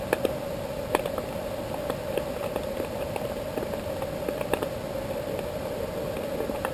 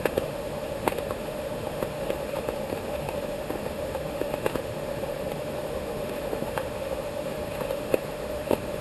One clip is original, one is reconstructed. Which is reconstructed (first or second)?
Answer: second